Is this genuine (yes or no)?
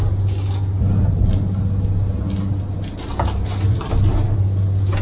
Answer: yes